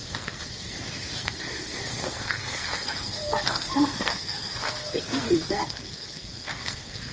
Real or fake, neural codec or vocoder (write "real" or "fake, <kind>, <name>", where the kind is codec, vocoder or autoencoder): fake, codec, SNAC